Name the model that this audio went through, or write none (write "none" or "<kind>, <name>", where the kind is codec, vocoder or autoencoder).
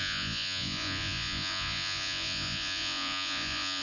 vocoder, Vocos